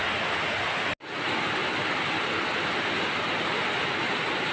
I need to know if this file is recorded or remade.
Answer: recorded